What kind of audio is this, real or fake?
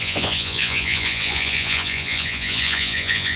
fake